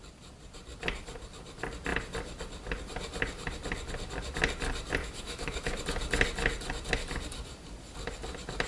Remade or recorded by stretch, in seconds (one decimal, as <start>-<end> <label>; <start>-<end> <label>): 0.0-5.0 recorded; 5.0-5.8 remade; 5.8-8.7 recorded

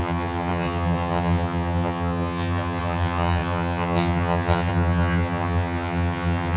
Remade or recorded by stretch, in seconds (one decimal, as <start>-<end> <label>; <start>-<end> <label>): 0.0-6.6 remade

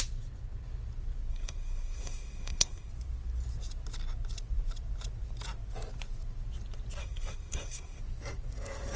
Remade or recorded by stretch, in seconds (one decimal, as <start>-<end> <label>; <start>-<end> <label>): 0.0-1.3 recorded; 1.3-2.9 remade; 2.9-7.0 recorded; 7.0-8.0 remade; 8.0-9.0 recorded

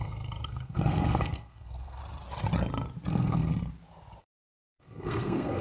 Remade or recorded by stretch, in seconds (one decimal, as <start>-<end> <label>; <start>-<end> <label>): 0.0-2.0 remade; 2.0-3.1 recorded; 3.1-3.5 remade; 3.5-4.2 recorded; 4.2-5.6 remade